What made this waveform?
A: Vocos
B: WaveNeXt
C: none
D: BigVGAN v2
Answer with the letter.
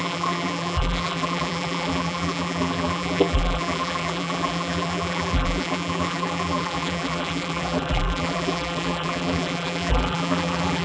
D